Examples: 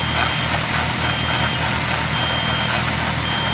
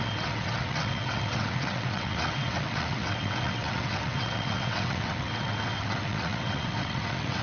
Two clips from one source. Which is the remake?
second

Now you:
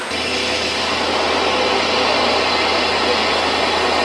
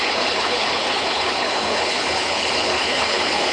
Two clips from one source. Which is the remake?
second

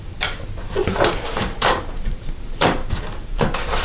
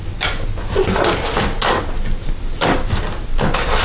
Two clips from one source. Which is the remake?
first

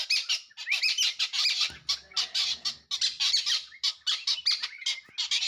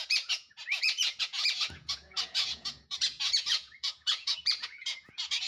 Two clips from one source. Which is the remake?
second